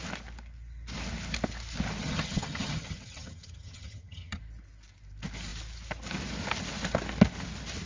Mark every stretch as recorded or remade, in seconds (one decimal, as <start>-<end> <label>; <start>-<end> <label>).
0.0-2.0 recorded; 2.0-4.4 remade; 4.4-7.9 recorded